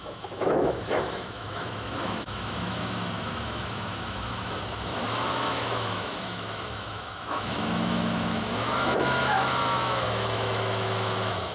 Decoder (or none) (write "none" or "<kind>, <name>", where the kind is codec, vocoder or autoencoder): autoencoder, DAC-VAE